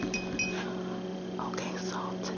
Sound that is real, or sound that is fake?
real